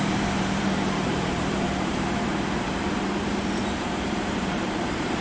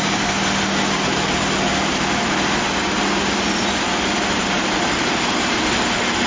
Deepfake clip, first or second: first